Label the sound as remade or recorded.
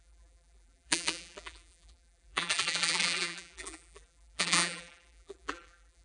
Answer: remade